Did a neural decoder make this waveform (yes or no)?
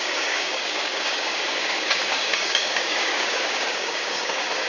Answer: yes